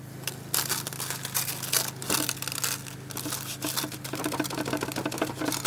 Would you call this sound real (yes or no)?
yes